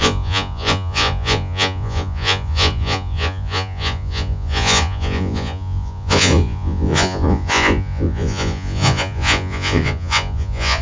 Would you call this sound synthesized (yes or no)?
yes